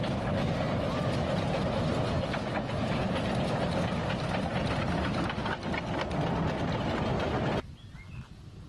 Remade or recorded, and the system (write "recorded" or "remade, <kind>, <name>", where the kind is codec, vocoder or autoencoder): recorded